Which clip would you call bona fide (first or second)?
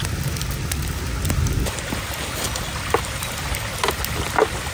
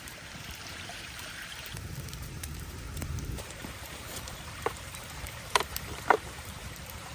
first